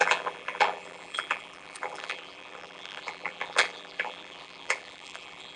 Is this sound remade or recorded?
remade